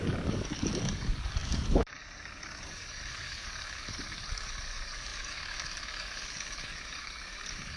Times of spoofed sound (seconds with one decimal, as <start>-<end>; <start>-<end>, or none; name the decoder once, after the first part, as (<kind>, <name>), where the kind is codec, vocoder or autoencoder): 0.0-7.8 (codec, DAC)